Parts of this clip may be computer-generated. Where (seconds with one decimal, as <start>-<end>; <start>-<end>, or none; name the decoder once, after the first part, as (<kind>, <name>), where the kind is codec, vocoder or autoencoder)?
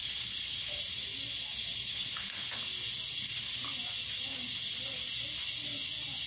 0.0-0.7 (codec, HILCodec); 1.9-2.6